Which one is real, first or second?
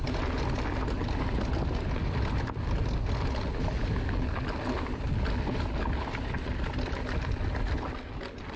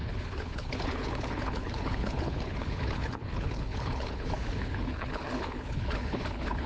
first